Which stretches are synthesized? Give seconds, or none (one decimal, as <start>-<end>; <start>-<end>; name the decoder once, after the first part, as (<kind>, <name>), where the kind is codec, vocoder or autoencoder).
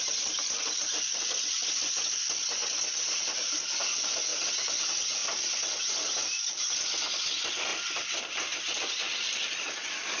none